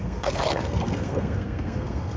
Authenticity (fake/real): fake